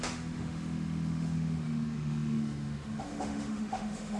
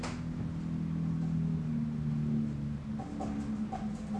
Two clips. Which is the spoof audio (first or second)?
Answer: first